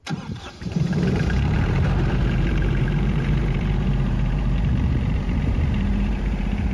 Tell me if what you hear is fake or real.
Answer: fake